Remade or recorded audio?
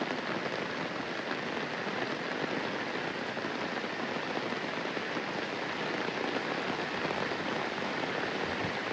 recorded